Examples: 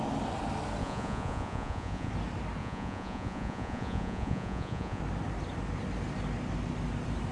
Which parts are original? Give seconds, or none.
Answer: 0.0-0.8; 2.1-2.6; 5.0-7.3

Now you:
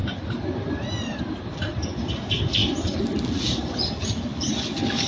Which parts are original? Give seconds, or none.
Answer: 0.0-5.1

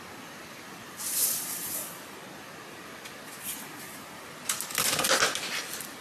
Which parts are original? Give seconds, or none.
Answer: 1.8-5.4

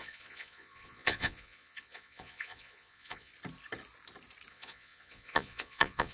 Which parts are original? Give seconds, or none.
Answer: 3.3-4.5

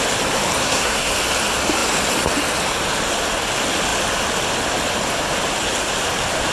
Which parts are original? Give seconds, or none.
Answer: 0.0-0.6; 1.1-6.5